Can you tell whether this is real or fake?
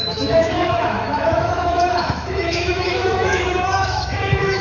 fake